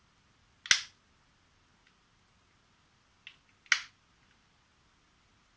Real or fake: real